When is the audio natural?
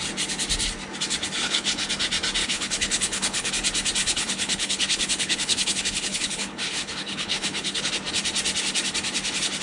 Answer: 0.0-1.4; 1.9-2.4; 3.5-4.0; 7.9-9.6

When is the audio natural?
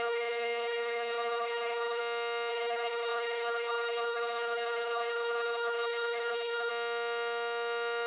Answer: 2.0-2.5; 6.7-8.1